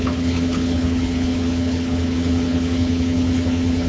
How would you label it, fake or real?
fake